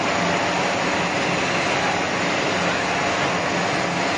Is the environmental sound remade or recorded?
recorded